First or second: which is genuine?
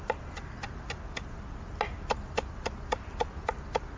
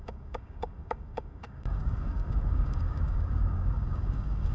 first